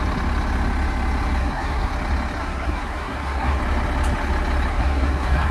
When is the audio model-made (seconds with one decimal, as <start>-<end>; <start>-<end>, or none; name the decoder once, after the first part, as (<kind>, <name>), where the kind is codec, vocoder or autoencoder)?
1.4-1.9 (codec, SNAC); 2.4-3.6; 4.7-5.5